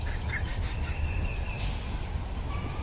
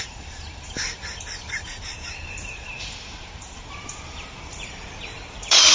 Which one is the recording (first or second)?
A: first